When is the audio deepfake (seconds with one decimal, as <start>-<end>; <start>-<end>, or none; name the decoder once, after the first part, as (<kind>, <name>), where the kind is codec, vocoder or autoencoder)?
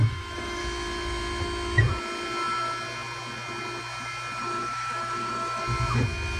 0.0-0.6 (autoencoder, DAC-VAE); 4.4-5.6